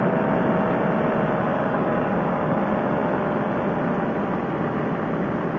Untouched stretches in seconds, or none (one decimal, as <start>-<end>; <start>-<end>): 0.0-1.5; 2.6-5.6